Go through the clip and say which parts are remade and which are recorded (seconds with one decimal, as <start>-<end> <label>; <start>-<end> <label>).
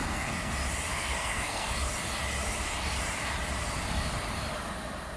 0.0-0.5 remade; 0.5-0.9 recorded; 0.9-1.7 remade; 1.7-5.2 recorded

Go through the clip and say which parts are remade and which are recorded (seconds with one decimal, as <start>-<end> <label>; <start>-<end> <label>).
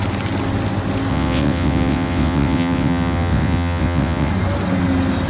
0.0-1.1 recorded; 1.1-4.3 remade; 4.3-5.3 recorded